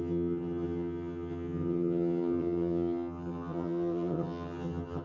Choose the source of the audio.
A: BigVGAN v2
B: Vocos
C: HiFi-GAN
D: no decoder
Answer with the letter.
C